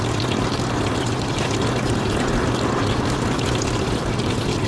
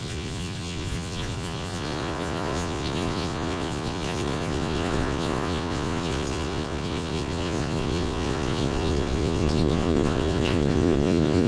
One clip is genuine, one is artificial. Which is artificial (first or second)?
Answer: second